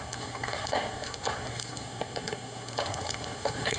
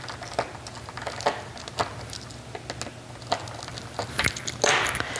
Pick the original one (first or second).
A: second